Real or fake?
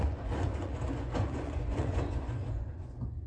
fake